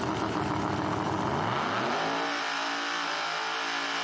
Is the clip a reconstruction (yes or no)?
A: no